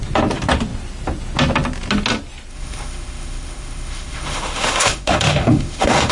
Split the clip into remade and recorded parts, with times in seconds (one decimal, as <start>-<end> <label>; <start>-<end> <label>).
0.0-2.5 recorded; 2.5-6.1 remade